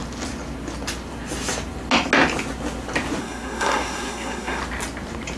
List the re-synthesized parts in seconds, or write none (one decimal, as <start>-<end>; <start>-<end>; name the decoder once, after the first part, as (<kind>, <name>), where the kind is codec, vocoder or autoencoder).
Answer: 3.2-4.6 (codec, SNAC)